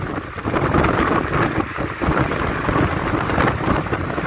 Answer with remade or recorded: recorded